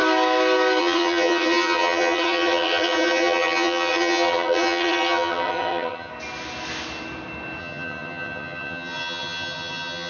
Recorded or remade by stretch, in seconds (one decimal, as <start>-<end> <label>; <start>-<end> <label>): 0.0-0.8 recorded; 0.8-6.1 remade; 6.1-7.6 recorded; 7.6-10.1 remade